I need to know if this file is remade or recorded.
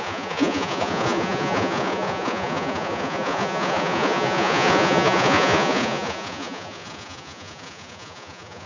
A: remade